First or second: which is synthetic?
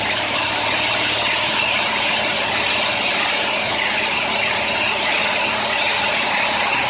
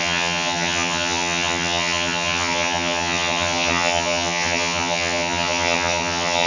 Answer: second